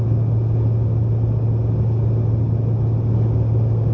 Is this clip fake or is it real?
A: real